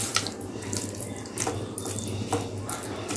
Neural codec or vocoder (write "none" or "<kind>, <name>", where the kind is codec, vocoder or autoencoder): none